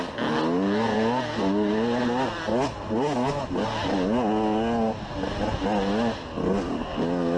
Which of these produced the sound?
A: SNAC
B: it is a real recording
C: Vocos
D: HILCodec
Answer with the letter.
B